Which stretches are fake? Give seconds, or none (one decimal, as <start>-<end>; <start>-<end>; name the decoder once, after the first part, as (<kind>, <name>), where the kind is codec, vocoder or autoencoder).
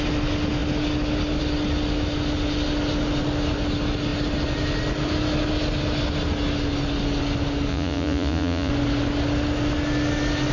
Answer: 7.7-8.7 (vocoder, Vocos)